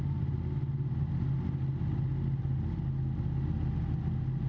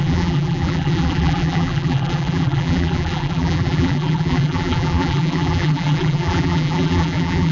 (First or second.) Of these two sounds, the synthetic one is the second